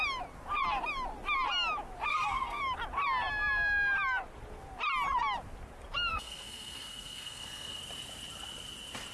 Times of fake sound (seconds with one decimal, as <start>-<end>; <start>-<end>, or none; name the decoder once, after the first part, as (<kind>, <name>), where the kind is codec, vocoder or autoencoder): 2.1-2.6 (codec, SNAC); 6.1-7.8